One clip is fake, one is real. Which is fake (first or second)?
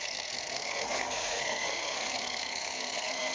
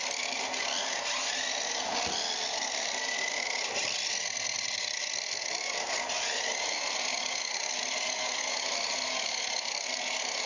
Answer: first